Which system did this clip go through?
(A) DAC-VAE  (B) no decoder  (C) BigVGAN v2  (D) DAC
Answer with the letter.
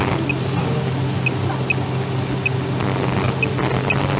B